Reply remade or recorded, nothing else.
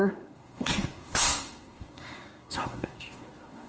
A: remade